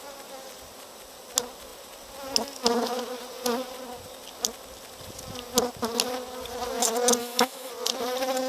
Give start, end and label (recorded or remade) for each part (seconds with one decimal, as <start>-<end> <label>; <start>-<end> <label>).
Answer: 0.0-7.2 recorded; 7.2-7.7 remade; 7.7-8.5 recorded